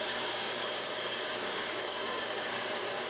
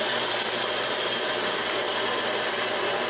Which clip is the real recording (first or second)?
second